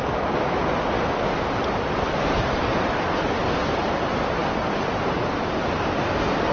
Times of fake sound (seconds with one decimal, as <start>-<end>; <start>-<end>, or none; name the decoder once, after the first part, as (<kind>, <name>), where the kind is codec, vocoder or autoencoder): none